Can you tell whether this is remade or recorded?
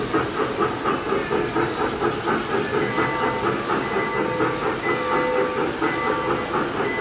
recorded